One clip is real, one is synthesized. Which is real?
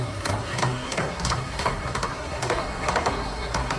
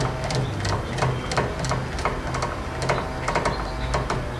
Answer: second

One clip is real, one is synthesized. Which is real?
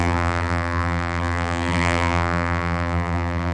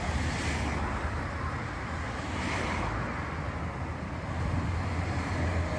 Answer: second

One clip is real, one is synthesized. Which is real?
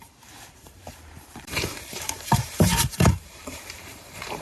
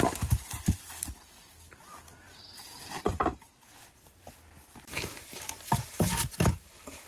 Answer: second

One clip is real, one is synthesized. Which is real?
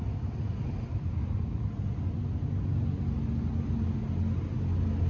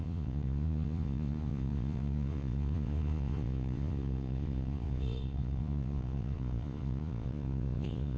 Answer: first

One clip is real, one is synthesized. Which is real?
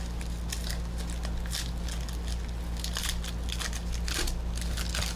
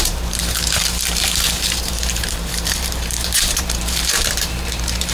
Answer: first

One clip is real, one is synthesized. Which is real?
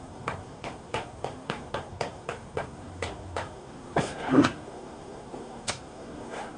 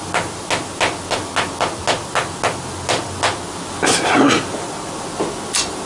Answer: second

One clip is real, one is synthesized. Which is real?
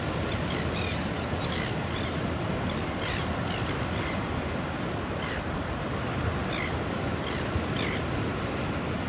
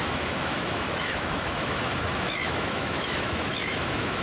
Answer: first